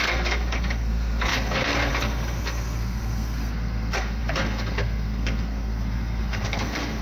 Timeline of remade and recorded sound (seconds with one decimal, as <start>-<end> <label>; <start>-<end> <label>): 0.0-7.0 remade